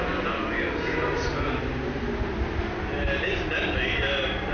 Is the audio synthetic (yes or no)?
no